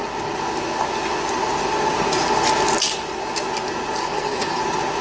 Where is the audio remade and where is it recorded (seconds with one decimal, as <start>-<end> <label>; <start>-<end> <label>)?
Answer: 0.0-4.0 recorded; 4.0-4.6 remade; 4.6-5.0 recorded

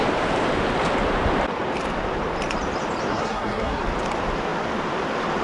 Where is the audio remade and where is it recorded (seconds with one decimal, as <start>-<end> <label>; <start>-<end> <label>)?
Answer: 0.0-3.1 recorded; 3.1-3.8 remade; 3.8-5.4 recorded